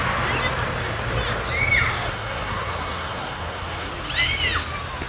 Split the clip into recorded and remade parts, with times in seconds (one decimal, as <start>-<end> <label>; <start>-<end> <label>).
0.0-2.1 recorded; 2.1-3.9 remade; 3.9-5.1 recorded